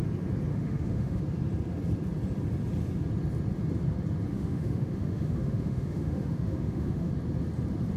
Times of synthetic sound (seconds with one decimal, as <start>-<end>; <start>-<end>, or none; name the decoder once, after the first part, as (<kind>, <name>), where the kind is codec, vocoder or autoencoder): 0.5-1.2 (autoencoder, DAC-VAE); 4.3-7.1